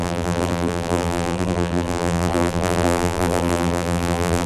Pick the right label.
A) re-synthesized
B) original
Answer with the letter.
A